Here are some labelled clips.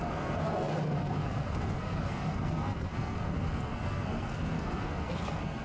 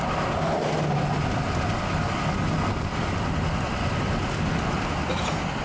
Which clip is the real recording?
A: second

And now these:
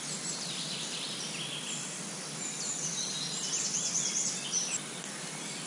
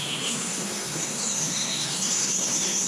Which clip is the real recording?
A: first